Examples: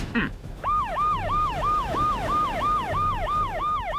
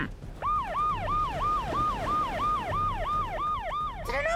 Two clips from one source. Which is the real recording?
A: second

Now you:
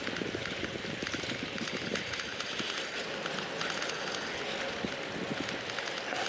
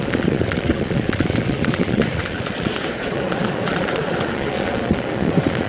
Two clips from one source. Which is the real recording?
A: first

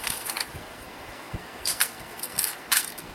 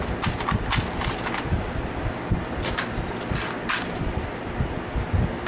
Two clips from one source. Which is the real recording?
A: second